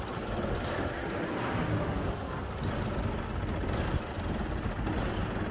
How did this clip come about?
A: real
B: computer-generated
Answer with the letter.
A